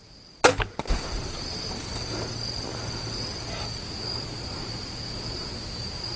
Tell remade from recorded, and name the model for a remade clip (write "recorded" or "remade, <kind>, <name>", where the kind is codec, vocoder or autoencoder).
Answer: recorded